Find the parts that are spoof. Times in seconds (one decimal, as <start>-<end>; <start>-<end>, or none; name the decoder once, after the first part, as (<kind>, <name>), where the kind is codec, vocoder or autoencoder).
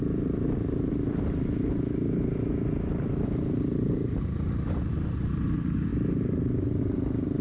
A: none